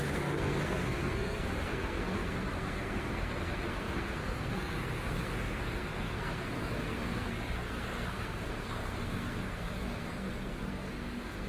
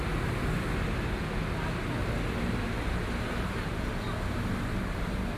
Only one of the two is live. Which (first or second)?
second